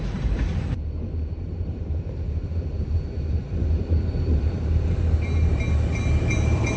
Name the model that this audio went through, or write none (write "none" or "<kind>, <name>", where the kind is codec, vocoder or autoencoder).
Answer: vocoder, BigVGAN v2